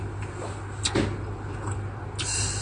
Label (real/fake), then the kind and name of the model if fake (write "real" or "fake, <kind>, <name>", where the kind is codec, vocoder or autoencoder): real